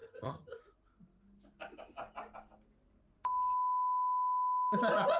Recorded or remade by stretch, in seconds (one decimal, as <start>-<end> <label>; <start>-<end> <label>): 0.0-0.6 remade; 0.6-5.2 recorded